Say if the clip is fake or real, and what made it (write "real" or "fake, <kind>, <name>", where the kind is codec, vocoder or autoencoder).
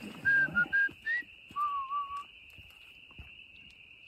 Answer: real